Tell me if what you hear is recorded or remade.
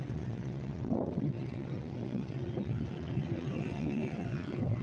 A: remade